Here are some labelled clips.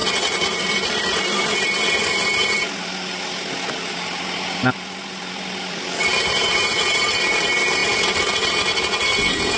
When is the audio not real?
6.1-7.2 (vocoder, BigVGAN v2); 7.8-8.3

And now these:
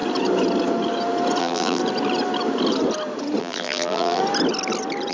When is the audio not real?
1.4-1.8 (vocoder, BigVGAN v2); 3.4-4.2

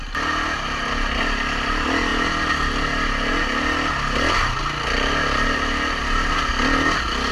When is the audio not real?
none

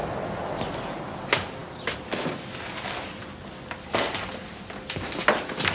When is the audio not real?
none

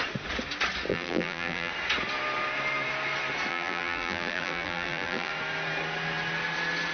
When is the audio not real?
0.9-1.7 (vocoder, BigVGAN v2); 3.5-5.3

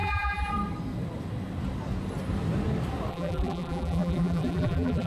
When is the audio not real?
0.0-0.5 (vocoder, BigVGAN v2); 3.1-5.1

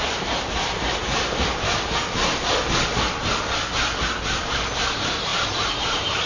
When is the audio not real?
0.0-1.0 (vocoder, BigVGAN v2); 4.8-6.3